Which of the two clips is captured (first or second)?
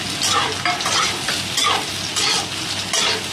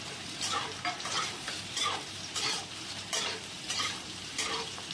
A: first